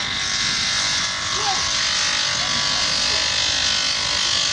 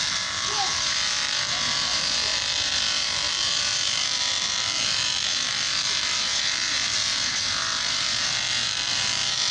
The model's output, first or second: second